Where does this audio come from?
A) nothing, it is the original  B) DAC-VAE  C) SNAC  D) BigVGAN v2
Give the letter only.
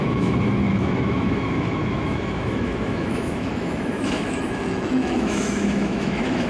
B